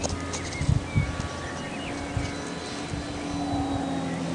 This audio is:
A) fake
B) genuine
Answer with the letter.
B